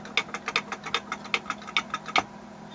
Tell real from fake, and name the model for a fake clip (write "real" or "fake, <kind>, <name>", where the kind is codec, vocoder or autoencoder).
real